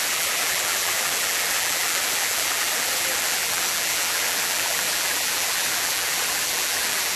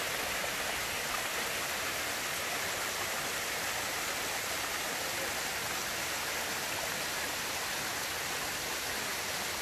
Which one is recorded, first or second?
second